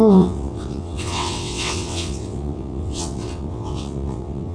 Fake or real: fake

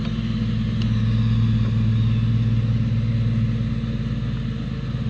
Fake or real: real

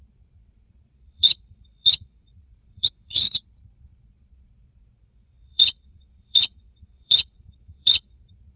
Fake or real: fake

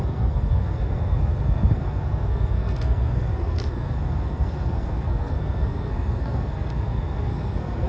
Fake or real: fake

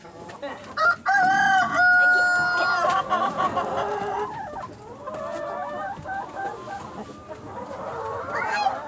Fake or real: real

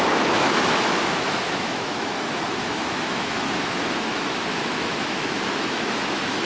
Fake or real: fake